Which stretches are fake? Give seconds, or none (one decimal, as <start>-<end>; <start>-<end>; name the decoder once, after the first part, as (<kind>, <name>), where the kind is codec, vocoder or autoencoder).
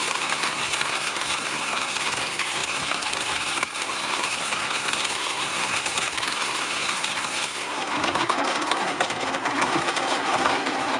0.0-11.0 (codec, SNAC)